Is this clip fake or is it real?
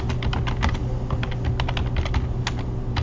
real